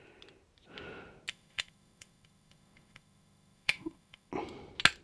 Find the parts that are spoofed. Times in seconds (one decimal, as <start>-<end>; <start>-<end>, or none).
1.3-4.3